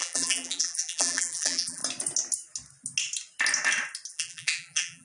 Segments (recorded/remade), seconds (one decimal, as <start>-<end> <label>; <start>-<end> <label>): 0.0-1.8 remade; 1.8-4.1 recorded; 4.1-5.0 remade